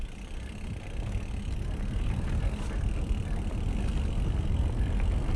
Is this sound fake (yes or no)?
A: no